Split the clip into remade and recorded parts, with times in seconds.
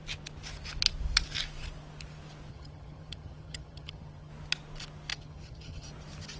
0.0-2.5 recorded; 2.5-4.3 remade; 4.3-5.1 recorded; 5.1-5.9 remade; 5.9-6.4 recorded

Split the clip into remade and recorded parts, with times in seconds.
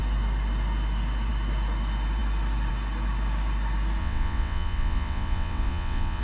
0.0-4.0 recorded; 4.0-6.2 remade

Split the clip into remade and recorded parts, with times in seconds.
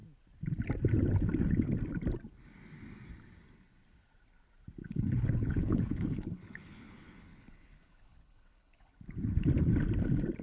0.0-4.8 recorded; 4.8-8.9 remade; 8.9-10.4 recorded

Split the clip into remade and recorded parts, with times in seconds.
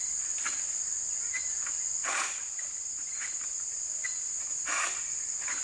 0.0-2.0 recorded; 2.0-5.6 remade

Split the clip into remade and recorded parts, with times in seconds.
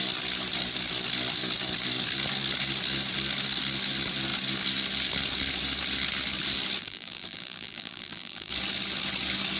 0.0-6.8 recorded; 6.8-8.5 remade; 8.5-9.6 recorded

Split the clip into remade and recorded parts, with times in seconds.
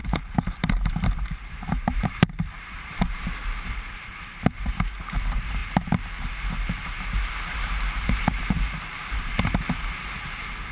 0.0-10.7 remade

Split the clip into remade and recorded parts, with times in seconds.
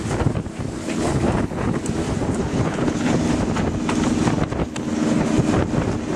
0.0-0.8 recorded; 0.8-1.8 remade; 1.8-2.4 recorded; 2.4-3.2 remade; 3.2-4.6 recorded; 4.6-5.3 remade; 5.3-6.2 recorded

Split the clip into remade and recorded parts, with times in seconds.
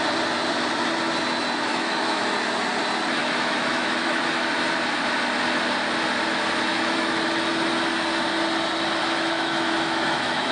0.0-1.7 recorded; 1.7-2.3 remade; 2.3-3.2 recorded; 3.2-4.2 remade; 4.2-6.7 recorded; 6.7-7.5 remade; 7.5-9.0 recorded; 9.0-10.5 remade